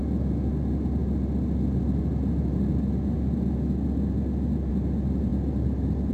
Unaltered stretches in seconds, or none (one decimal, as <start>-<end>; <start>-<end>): 0.0-6.1